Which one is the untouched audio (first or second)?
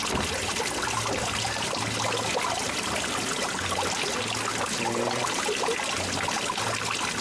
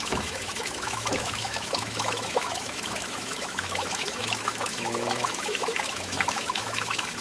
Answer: first